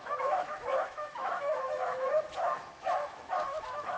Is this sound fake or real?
fake